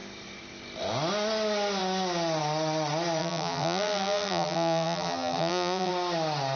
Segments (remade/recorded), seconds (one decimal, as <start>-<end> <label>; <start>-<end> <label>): 0.0-3.2 recorded; 3.2-5.9 remade; 5.9-6.6 recorded